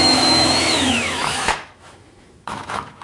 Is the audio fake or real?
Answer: fake